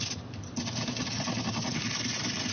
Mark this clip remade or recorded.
recorded